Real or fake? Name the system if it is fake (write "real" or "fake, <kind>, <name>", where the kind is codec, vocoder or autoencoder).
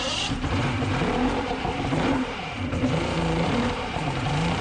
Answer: fake, vocoder, BigVGAN v2